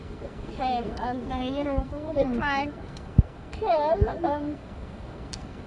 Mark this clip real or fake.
fake